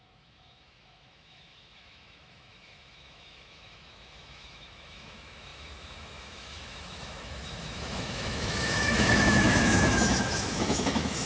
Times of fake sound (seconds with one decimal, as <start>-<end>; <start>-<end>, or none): 0.0-11.3